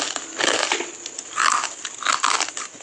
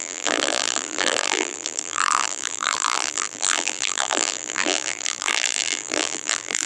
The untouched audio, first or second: first